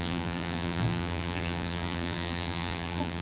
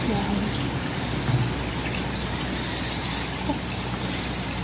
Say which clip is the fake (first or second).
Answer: first